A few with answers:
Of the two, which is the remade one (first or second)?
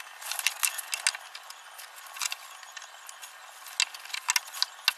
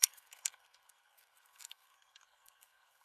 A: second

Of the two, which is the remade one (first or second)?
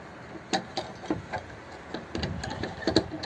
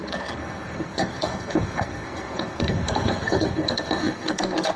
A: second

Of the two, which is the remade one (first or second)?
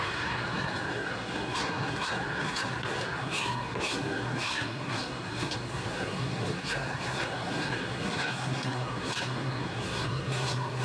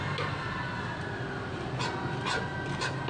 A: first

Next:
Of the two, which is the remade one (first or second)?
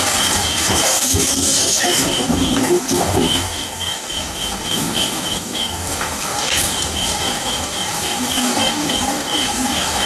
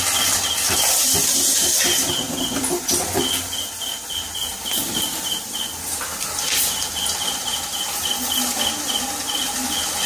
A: first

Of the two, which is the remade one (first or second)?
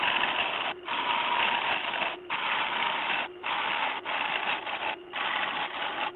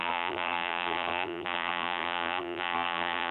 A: second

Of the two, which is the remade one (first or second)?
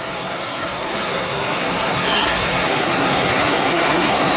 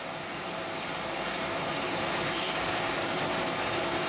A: first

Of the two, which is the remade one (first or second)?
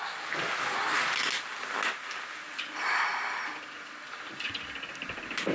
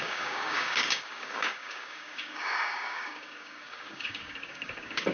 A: second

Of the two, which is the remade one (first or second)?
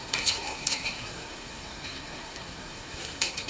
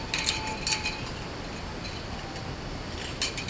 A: first